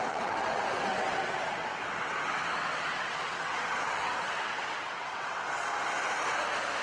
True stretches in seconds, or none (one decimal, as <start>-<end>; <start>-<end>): 5.7-6.8